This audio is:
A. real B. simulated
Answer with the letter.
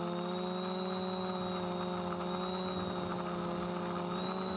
A